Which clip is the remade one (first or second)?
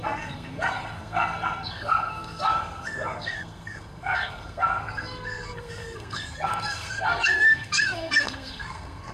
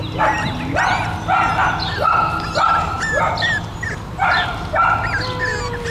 first